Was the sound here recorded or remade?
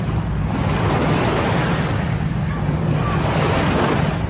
recorded